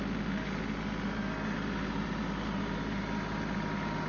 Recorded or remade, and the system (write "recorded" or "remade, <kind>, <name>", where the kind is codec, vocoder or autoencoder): recorded